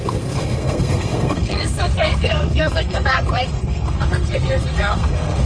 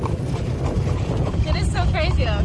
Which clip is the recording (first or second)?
second